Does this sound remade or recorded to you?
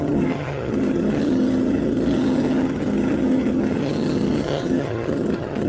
remade